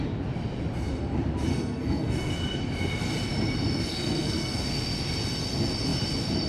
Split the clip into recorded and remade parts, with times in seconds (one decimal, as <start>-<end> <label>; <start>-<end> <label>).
0.0-1.5 recorded; 1.5-2.3 remade; 2.3-3.9 recorded; 3.9-4.6 remade; 4.6-6.5 recorded

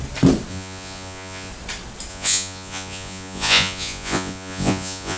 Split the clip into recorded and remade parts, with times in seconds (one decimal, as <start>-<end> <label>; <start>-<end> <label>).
0.0-0.5 recorded; 0.5-1.5 remade; 1.5-2.1 recorded; 2.1-5.2 remade

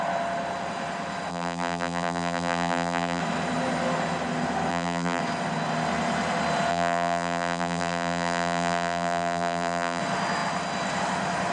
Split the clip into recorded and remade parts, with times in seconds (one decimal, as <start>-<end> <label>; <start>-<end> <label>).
0.0-1.3 recorded; 1.3-3.2 remade; 3.2-4.7 recorded; 4.7-5.2 remade; 5.2-6.7 recorded; 6.7-10.0 remade; 10.0-11.5 recorded

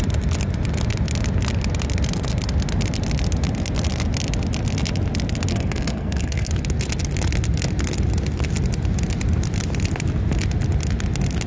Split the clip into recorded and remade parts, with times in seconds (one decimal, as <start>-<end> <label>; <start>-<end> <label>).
0.0-5.5 recorded; 5.5-6.5 remade; 6.5-11.5 recorded

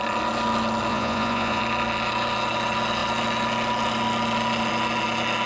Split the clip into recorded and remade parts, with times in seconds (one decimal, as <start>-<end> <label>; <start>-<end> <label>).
0.0-0.9 recorded; 0.9-1.6 remade; 1.6-5.5 recorded